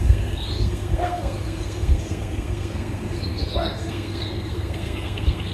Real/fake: fake